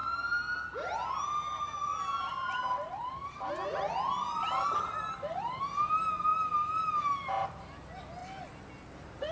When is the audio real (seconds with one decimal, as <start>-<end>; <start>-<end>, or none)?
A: 0.0-3.2; 5.6-8.2; 8.9-9.3